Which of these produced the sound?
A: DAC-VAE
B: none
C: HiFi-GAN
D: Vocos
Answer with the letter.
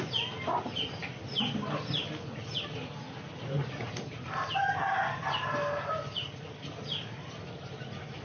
B